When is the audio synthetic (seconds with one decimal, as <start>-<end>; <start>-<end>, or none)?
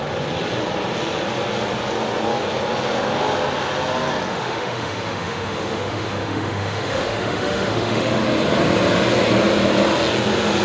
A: 4.3-8.2